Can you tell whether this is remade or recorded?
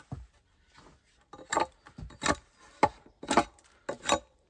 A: recorded